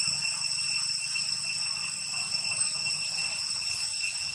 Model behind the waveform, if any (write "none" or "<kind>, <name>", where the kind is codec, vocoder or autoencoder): none